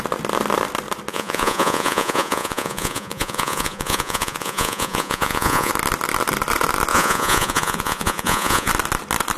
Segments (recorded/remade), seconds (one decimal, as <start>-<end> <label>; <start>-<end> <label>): 0.0-1.1 recorded; 1.1-5.7 remade; 5.7-6.9 recorded; 6.9-8.7 remade; 8.7-9.4 recorded